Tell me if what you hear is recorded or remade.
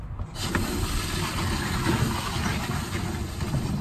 recorded